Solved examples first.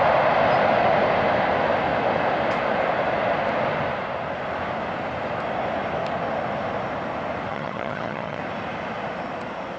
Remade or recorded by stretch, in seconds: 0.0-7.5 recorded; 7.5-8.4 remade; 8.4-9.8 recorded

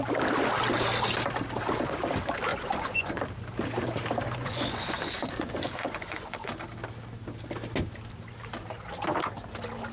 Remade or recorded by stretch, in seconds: 0.0-2.5 recorded; 2.5-3.2 remade; 3.2-4.2 recorded; 4.2-6.5 remade; 6.5-9.9 recorded

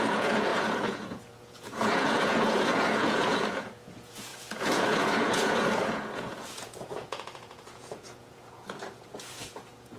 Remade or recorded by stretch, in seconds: 0.0-10.0 remade

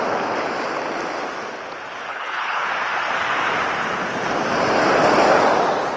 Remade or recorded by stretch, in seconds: 0.0-2.1 recorded; 2.1-2.7 remade; 2.7-6.0 recorded